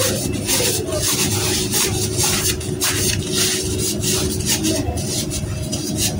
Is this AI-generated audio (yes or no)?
no